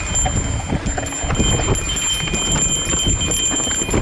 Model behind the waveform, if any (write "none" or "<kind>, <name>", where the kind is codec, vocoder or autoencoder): none